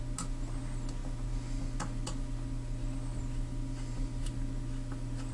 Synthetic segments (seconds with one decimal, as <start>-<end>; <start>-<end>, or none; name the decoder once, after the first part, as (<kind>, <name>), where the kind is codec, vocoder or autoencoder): none